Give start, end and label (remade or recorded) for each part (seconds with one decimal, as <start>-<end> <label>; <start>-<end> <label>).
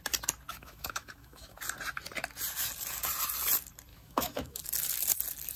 0.0-0.5 recorded; 0.5-1.6 remade; 1.6-3.9 recorded; 3.9-4.6 remade; 4.6-5.6 recorded